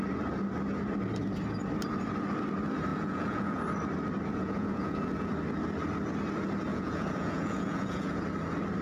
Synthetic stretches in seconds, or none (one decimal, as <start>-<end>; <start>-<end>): 2.9-3.6; 4.3-5.3; 6.7-8.2